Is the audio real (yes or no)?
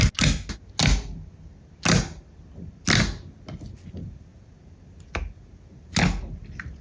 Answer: yes